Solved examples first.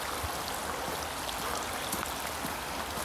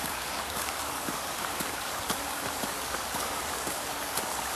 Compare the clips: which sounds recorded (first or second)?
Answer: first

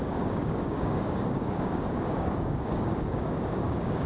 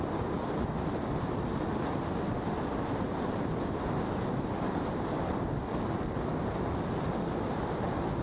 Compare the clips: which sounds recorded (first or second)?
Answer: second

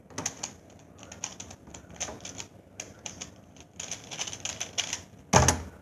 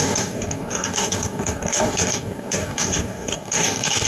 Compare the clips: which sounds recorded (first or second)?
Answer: first